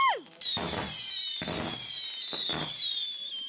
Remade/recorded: recorded